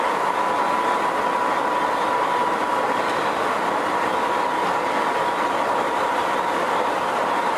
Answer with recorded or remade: recorded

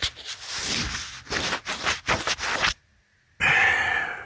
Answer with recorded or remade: recorded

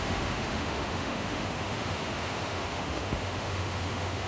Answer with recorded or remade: remade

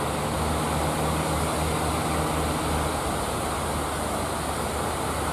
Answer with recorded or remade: recorded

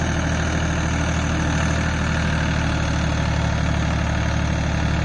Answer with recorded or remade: recorded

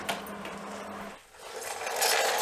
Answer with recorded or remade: recorded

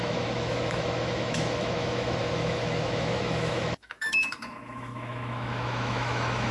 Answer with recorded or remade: remade